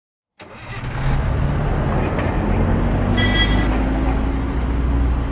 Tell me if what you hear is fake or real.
real